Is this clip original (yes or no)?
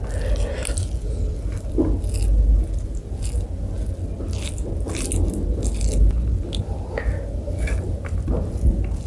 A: yes